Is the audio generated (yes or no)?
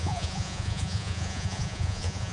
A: yes